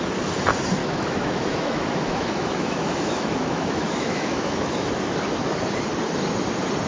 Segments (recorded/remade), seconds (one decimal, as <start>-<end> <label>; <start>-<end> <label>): 0.0-0.8 recorded; 0.8-4.9 remade; 4.9-6.9 recorded